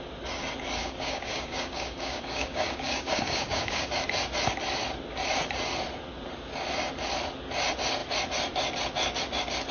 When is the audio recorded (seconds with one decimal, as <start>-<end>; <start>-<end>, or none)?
0.0-0.8; 3.9-9.7